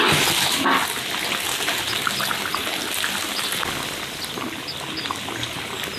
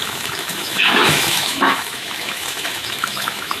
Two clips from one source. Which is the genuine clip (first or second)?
first